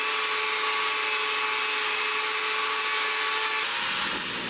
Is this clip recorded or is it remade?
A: recorded